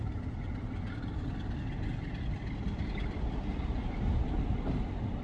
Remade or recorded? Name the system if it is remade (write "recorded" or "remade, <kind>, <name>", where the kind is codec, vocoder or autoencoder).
recorded